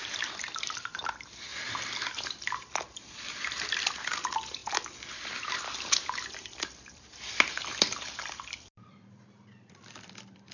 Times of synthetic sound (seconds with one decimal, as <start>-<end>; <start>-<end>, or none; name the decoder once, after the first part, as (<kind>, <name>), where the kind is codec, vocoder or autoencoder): 0.0-1.5 (vocoder, BigVGAN v2); 3.6-4.6; 5.4-10.5